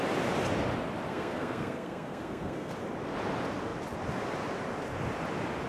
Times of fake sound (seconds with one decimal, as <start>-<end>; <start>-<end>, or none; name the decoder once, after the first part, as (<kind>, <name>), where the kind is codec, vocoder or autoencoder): 1.1-2.7 (codec, SNAC)